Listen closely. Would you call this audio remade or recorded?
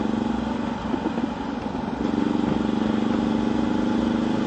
recorded